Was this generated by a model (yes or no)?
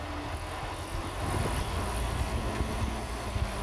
no